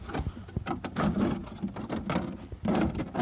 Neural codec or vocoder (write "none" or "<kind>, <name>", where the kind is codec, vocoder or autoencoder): none